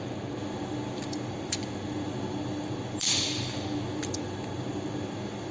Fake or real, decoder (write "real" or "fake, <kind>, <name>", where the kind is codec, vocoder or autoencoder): real